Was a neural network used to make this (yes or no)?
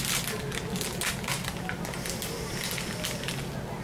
no